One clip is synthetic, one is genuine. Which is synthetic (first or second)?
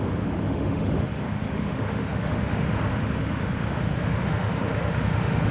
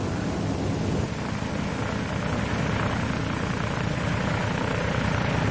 first